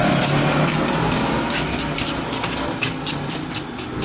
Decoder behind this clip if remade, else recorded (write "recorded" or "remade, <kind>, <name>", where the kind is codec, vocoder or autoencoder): recorded